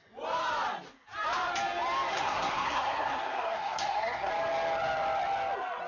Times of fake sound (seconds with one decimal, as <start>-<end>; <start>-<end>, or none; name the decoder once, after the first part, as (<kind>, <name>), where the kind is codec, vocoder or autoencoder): 2.1-4.3 (codec, SNAC)

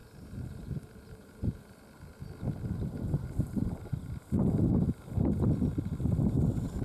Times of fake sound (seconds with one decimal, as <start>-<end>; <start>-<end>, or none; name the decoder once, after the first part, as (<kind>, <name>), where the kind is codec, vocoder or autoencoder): 0.0-1.6 (vocoder, BigVGAN v2)

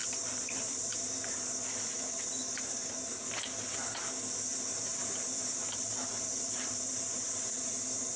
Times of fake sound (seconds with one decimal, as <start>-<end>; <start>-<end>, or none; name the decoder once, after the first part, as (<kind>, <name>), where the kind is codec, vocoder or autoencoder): 0.0-0.9 (vocoder, BigVGAN v2); 4.9-7.0

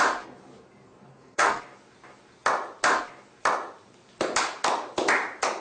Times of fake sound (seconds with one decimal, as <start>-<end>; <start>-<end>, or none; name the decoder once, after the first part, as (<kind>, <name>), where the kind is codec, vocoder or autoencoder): 1.1-1.6 (codec, SNAC)

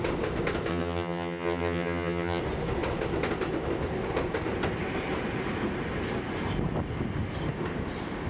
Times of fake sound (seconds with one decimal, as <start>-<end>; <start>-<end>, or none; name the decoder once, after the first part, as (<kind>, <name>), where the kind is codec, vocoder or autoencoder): 0.7-2.4 (vocoder, HiFi-GAN)

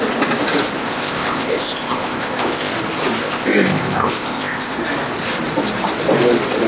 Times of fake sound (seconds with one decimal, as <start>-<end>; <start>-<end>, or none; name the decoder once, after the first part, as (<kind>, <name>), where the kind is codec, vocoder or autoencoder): 0.8-2.7 (codec, ZipCodec); 3.2-4.7